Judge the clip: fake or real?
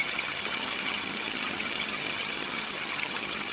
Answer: fake